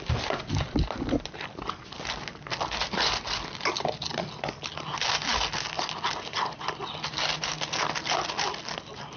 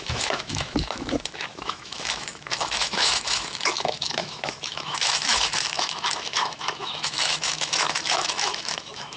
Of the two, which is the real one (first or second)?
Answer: first